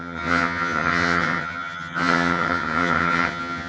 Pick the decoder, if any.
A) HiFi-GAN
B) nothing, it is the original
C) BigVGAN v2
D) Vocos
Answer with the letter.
A